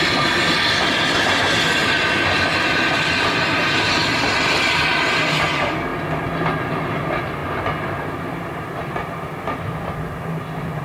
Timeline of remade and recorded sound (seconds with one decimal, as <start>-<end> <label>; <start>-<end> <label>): 0.0-1.8 recorded; 1.8-2.7 remade; 2.7-10.8 recorded